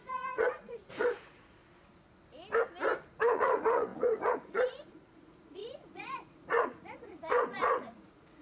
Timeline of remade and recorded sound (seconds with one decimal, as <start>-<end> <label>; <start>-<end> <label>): 0.0-1.6 remade; 1.6-3.1 recorded; 3.1-8.4 remade